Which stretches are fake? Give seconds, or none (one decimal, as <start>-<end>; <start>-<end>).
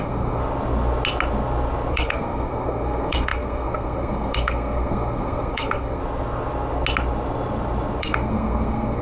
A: 0.0-0.4; 1.9-6.0; 8.0-9.0